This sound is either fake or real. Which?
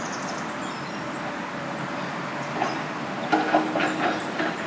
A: real